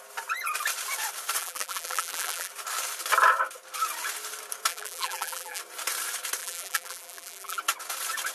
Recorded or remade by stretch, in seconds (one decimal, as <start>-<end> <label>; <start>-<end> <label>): 0.0-1.4 recorded; 1.4-2.5 remade; 2.5-4.7 recorded; 4.7-5.6 remade; 5.6-6.4 recorded; 6.4-7.6 remade; 7.6-8.3 recorded